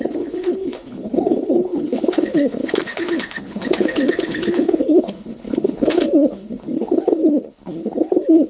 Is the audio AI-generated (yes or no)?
yes